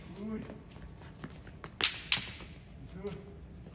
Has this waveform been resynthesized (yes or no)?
no